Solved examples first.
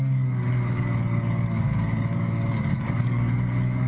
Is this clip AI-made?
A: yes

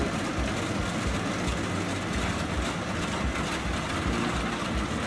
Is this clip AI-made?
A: no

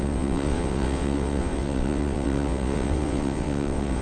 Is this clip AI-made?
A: yes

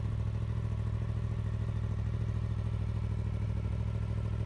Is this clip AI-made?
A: no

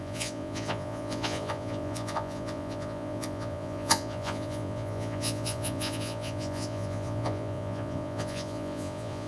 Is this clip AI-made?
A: yes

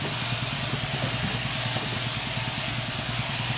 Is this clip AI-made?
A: no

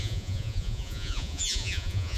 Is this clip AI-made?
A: yes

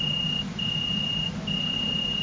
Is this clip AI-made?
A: no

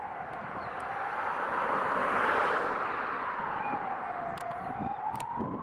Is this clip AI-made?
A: no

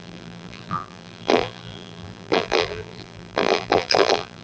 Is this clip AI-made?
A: yes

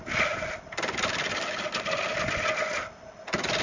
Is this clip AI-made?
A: no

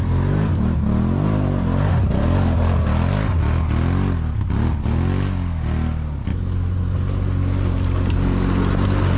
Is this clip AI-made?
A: no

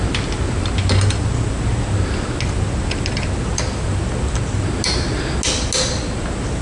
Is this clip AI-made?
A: no